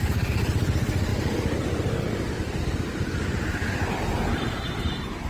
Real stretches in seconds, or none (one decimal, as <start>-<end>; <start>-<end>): 1.1-4.3